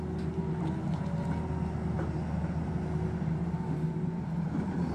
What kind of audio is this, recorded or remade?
recorded